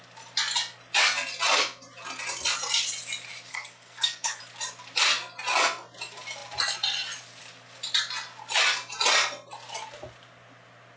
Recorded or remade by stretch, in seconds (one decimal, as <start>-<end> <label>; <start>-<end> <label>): 0.0-3.5 recorded; 3.5-4.4 remade; 4.4-11.0 recorded